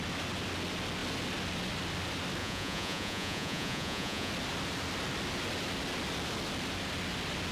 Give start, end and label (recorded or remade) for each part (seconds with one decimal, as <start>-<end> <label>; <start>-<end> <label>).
0.0-2.4 recorded; 2.4-4.3 remade; 4.3-7.5 recorded